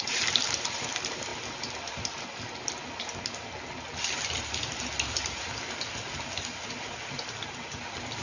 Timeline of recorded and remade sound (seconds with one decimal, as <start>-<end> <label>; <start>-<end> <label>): 0.0-8.2 recorded